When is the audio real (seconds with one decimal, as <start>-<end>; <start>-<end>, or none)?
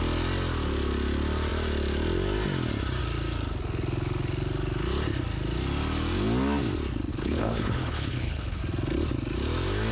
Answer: 0.0-7.1; 8.6-9.9